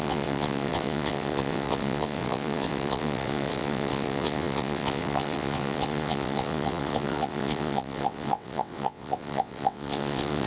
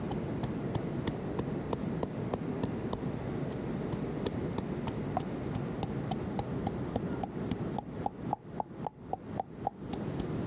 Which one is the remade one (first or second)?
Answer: first